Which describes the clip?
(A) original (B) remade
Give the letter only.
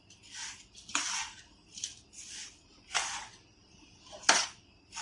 A